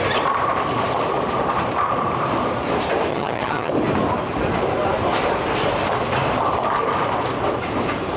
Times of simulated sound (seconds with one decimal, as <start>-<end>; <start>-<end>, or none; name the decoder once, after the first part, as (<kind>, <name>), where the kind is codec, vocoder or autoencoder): 3.1-3.7 (vocoder, HiFi-GAN)